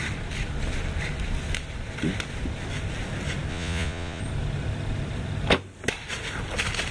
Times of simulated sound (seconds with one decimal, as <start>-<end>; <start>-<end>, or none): 3.5-4.2